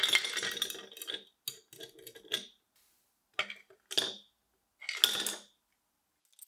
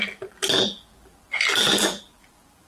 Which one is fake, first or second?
second